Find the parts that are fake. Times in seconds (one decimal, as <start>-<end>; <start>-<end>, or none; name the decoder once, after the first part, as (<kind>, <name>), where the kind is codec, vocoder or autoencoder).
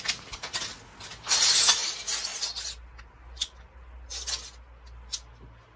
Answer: none